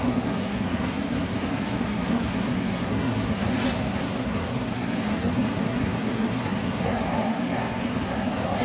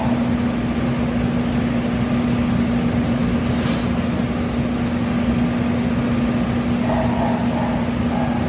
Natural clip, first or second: second